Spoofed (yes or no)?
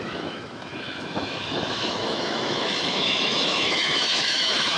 yes